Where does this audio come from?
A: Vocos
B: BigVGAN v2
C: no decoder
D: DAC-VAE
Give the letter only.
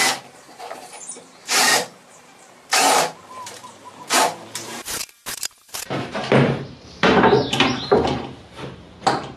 B